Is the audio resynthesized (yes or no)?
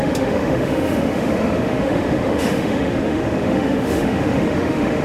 yes